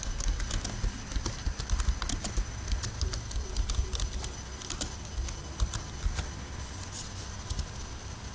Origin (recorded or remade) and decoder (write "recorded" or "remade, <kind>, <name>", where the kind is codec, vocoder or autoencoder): recorded